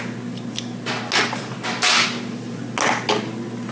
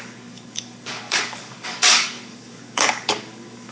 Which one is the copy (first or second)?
second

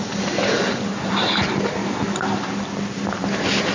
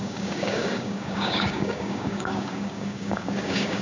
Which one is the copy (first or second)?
second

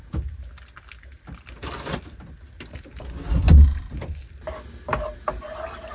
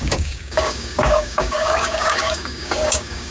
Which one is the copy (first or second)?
second